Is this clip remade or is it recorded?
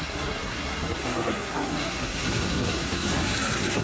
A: remade